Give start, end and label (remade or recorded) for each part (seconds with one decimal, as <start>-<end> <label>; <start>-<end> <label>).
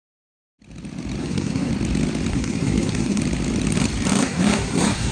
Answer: 0.0-1.2 recorded; 1.2-1.7 remade; 1.7-2.3 recorded; 2.3-3.2 remade; 3.2-4.1 recorded; 4.1-5.1 remade